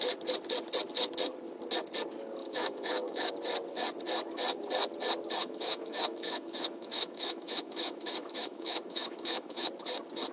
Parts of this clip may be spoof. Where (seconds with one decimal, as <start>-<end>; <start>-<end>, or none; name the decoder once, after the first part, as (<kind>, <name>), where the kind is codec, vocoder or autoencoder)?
2.4-3.3 (autoencoder, DAC-VAE); 5.4-9.7